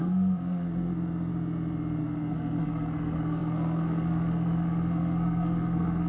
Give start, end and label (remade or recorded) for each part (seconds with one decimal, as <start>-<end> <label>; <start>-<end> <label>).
0.0-1.3 remade; 1.3-2.0 recorded; 2.0-6.1 remade